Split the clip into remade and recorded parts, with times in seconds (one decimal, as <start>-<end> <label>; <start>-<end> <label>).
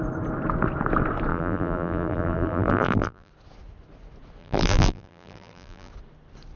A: 0.0-1.3 recorded; 1.3-3.3 remade; 3.3-4.4 recorded; 4.4-5.9 remade; 5.9-6.6 recorded